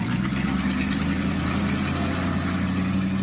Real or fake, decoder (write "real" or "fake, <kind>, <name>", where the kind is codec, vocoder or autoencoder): real